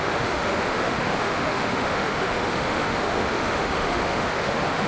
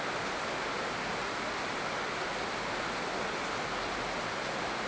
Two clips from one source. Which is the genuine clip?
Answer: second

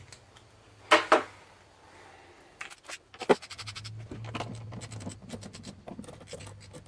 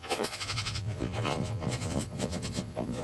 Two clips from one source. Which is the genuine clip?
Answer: first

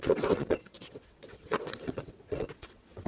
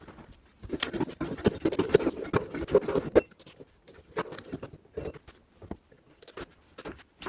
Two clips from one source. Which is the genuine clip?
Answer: second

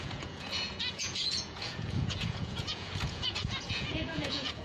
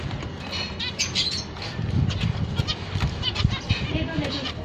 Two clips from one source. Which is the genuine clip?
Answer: second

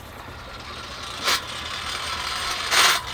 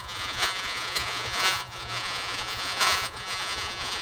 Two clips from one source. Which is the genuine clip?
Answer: first